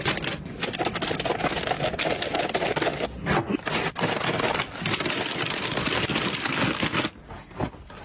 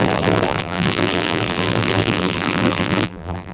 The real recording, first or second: first